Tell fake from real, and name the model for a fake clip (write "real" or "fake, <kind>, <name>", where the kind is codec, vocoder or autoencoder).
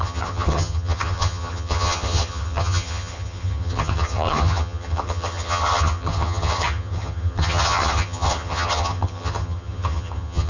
fake, vocoder, HiFi-GAN